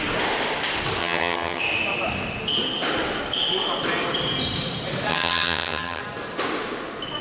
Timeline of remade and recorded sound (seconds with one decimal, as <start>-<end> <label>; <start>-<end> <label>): 0.0-1.0 recorded; 1.0-1.6 remade; 1.6-5.1 recorded; 5.1-6.0 remade; 6.0-7.2 recorded